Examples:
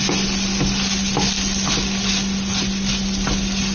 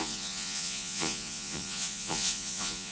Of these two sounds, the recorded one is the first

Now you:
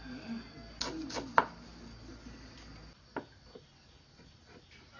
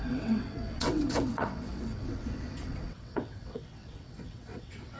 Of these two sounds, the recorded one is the first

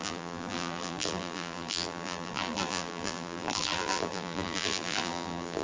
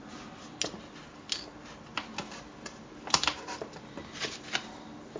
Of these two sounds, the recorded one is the second